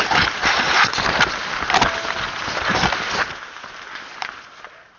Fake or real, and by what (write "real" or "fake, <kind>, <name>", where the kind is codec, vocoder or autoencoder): real